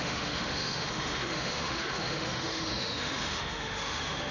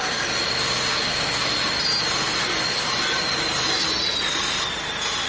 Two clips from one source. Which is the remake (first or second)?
first